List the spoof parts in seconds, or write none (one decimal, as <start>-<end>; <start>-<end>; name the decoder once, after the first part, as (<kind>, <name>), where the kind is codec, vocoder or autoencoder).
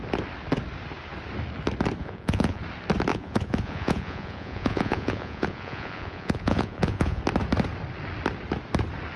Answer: 2.0-2.6 (vocoder, Vocos); 3.1-7.2